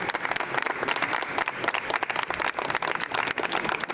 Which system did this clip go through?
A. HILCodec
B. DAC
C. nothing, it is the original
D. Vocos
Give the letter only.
C